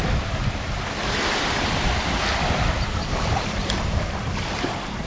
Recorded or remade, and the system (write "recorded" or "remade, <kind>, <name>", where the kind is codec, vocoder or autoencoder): remade, vocoder, BigVGAN v2